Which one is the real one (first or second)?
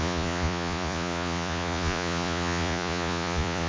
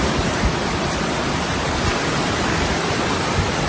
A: second